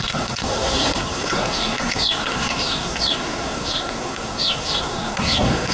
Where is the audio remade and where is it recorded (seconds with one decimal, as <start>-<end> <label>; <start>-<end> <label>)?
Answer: 0.0-5.7 remade

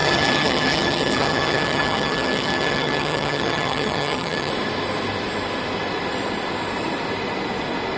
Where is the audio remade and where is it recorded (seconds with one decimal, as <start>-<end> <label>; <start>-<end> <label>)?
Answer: 0.0-4.5 remade; 4.5-8.0 recorded